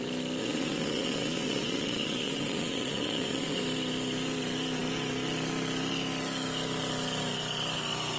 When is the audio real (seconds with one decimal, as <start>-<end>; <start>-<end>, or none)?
0.0-0.4; 3.6-8.2